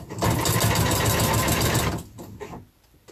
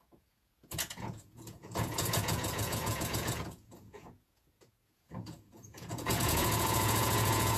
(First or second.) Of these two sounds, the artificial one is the second